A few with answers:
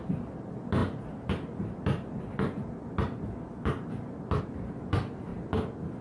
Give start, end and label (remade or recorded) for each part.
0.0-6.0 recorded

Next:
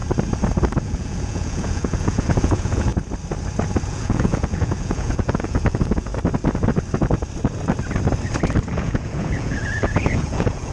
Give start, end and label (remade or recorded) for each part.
0.0-0.8 recorded; 0.8-2.9 remade; 2.9-3.9 recorded; 3.9-6.1 remade; 6.1-8.7 recorded; 8.7-10.7 remade

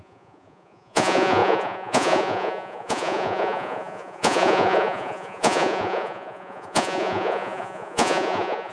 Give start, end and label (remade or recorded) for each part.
0.0-8.7 remade